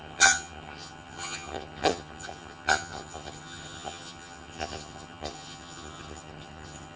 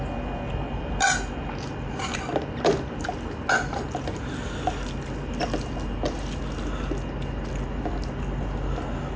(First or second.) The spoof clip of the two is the first